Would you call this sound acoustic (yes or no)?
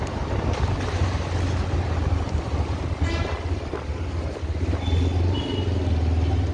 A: yes